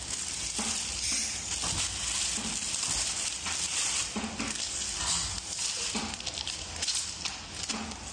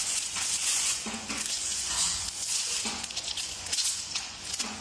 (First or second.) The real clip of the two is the first